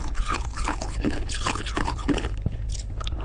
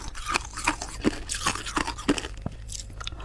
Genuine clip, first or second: second